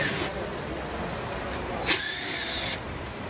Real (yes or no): yes